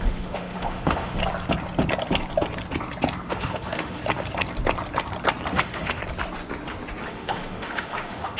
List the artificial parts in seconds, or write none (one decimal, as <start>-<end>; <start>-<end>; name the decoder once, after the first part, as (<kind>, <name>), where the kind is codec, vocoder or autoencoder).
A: 0.0-1.2 (autoencoder, DAC-VAE); 3.3-4.0; 5.5-6.0; 7.1-8.4